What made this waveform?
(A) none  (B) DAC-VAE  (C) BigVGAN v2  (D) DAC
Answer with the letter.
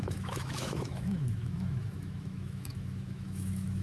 B